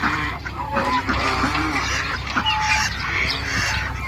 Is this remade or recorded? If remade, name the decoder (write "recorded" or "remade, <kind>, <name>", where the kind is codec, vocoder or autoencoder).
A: remade, vocoder, BigVGAN v2